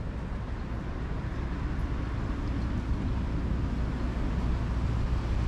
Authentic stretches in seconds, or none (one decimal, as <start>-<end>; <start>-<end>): 0.0-5.5